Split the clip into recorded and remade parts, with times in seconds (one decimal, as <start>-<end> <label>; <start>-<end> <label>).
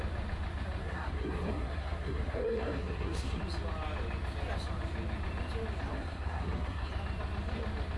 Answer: 0.0-0.8 recorded; 0.8-3.4 remade; 3.4-5.9 recorded; 5.9-6.9 remade; 6.9-8.0 recorded